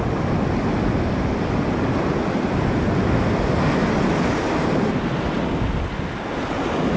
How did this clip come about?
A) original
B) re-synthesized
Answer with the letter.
A